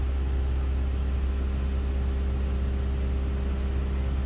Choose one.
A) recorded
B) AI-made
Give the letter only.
A